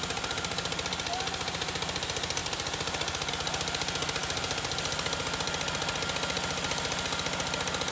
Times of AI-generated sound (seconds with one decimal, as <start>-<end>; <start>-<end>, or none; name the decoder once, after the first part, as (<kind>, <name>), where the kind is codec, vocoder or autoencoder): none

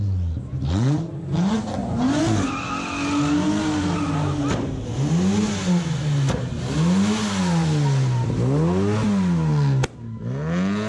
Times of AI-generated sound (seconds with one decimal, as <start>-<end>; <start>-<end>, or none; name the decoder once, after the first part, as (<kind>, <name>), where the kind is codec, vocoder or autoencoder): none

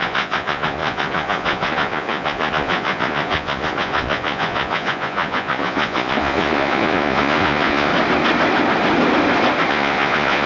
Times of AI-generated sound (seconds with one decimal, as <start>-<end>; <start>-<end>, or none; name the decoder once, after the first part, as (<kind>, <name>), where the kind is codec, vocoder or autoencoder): 0.0-7.9 (vocoder, Vocos); 9.7-10.5

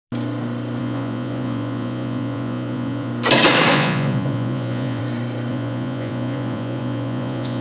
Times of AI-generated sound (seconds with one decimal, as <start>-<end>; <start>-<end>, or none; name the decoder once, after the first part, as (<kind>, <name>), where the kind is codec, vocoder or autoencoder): 0.8-3.1 (vocoder, Vocos); 3.7-5.0; 5.5-7.6

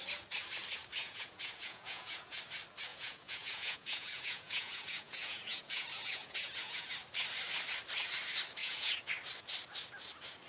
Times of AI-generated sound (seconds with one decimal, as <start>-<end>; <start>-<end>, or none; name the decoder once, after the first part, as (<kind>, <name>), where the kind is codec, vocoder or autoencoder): 1.0-2.4 (vocoder, Vocos); 2.9-6.9; 8.6-9.1